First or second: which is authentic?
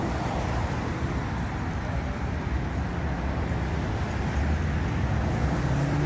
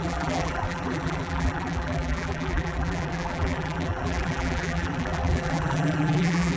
first